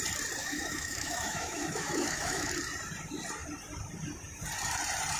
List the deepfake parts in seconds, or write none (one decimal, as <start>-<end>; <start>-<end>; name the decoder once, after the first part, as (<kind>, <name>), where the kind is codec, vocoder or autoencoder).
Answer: 0.4-2.5 (autoencoder, DAC-VAE)